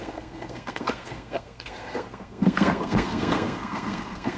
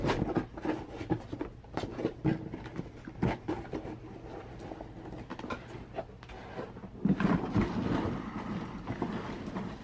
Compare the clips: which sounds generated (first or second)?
first